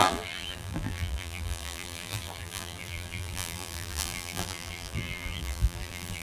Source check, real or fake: fake